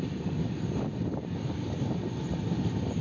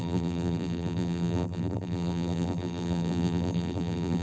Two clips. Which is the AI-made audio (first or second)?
second